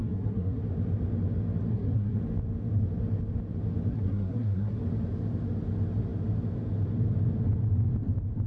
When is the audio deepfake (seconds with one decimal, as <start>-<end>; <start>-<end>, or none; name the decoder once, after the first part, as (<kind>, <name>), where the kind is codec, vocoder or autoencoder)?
0.0-0.6 (codec, SNAC); 1.7-2.2; 3.9-4.8